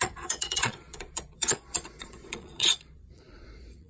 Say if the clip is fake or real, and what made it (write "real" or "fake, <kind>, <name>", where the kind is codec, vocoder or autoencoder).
fake, vocoder, Vocos